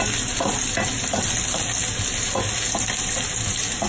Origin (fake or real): real